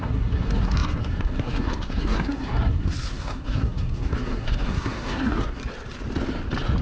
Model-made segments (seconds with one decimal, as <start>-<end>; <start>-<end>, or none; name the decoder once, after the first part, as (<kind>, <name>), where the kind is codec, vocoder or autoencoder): 0.0-5.6 (codec, SNAC)